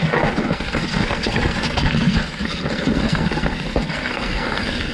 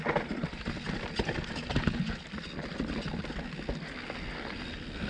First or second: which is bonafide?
second